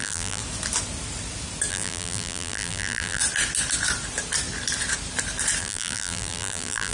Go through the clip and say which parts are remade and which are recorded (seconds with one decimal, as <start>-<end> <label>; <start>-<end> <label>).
0.0-0.4 remade; 0.4-1.7 recorded; 1.7-3.2 remade; 3.2-5.6 recorded; 5.6-6.9 remade